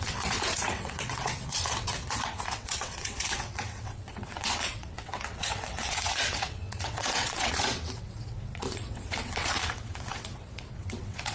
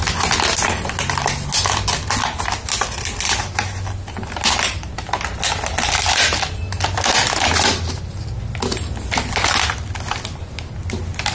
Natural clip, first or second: second